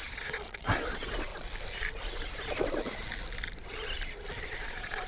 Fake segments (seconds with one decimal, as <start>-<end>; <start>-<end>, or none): 0.0-1.3; 4.4-5.1